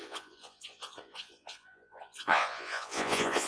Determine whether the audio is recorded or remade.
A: remade